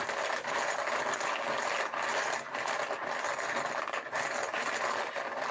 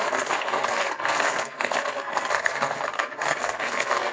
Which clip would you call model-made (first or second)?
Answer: second